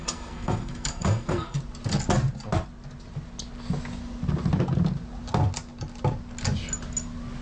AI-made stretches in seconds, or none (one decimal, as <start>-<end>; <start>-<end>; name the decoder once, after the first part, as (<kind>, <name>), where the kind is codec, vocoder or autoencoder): 0.0-1.6 (codec, SNAC)